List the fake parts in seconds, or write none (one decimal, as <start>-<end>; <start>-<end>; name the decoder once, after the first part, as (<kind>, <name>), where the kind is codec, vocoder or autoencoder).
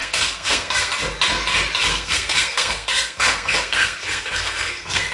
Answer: 0.0-0.9 (codec, SNAC); 1.9-5.1